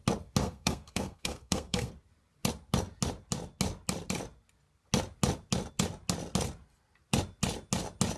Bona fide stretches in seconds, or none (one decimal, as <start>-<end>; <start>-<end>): 0.0-0.4; 1.9-8.2